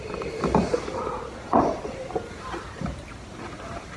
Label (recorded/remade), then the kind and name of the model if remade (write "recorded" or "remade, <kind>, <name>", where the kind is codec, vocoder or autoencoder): remade, vocoder, BigVGAN v2